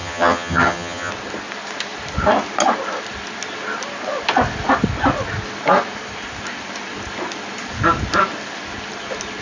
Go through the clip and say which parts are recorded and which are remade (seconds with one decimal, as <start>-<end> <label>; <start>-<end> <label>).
0.0-1.1 remade; 1.1-9.4 recorded